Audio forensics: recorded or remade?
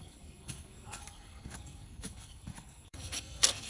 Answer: remade